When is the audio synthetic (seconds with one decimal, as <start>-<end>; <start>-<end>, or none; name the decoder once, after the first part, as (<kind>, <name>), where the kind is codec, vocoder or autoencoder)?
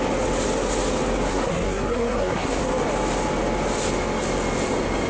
1.3-2.6 (codec, SNAC)